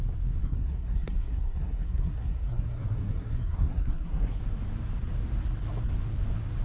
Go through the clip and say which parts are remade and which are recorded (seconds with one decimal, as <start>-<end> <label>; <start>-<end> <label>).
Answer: 0.0-0.4 recorded; 0.4-4.4 remade; 4.4-6.6 recorded